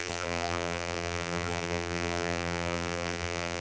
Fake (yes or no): yes